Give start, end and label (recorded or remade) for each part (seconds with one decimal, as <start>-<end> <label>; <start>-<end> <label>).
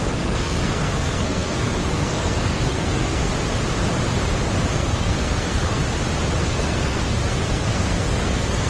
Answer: 0.0-3.3 remade; 3.3-4.7 recorded; 4.7-5.8 remade; 5.8-6.4 recorded; 6.4-8.7 remade